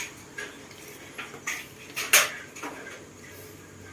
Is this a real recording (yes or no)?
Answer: yes